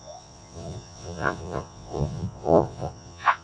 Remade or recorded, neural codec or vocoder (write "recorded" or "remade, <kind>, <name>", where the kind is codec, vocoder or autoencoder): remade, vocoder, Vocos